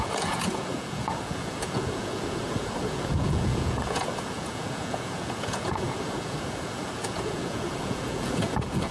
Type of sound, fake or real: fake